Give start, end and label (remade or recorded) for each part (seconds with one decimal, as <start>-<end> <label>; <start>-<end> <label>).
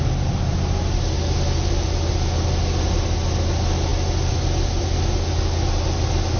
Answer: 0.0-6.4 recorded